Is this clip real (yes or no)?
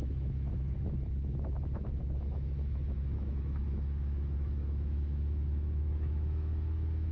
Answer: no